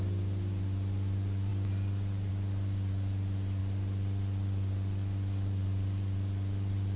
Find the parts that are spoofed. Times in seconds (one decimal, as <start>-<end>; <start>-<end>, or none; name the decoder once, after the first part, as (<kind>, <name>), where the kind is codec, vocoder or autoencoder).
none